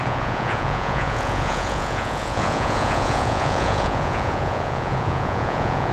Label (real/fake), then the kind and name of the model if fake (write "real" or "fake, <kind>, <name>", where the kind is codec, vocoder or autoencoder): fake, vocoder, Vocos